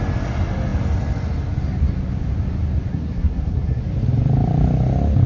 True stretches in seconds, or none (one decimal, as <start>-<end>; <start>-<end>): 0.0-2.9; 3.8-5.3